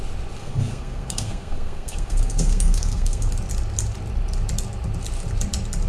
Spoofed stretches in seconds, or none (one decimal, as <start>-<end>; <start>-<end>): 0.4-3.3